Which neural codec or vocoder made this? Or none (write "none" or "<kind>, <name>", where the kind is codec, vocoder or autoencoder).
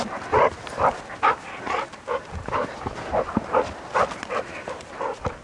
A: none